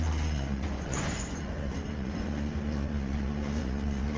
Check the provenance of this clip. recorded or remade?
remade